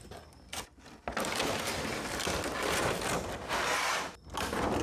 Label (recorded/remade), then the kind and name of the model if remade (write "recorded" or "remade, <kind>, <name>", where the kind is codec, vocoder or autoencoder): recorded